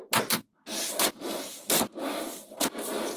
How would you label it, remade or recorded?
recorded